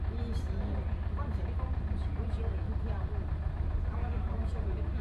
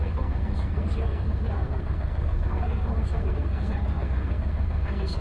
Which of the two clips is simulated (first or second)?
second